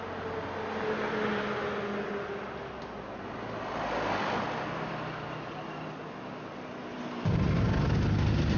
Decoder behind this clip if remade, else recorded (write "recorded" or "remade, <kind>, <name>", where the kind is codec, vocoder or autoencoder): recorded